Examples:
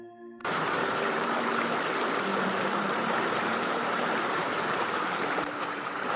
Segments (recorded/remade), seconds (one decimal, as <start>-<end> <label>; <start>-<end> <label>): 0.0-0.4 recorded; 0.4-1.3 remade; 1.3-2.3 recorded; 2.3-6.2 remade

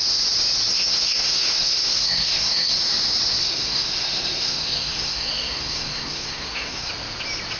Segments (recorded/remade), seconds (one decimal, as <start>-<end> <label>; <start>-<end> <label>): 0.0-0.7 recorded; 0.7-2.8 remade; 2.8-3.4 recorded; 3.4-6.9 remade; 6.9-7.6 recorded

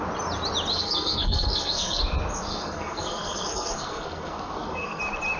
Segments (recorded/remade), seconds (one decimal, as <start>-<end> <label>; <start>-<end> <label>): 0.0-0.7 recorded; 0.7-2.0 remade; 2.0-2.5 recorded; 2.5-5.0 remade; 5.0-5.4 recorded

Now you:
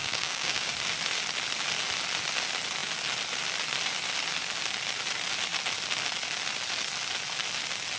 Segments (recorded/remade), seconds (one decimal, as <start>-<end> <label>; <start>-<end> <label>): 0.0-0.7 remade; 0.7-8.0 recorded